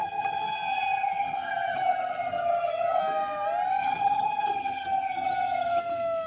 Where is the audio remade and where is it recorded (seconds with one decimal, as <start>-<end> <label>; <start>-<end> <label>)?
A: 0.0-3.0 remade; 3.0-3.8 recorded; 3.8-5.8 remade; 5.8-6.3 recorded